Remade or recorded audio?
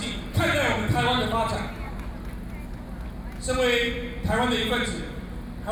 recorded